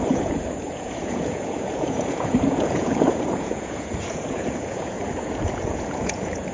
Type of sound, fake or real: fake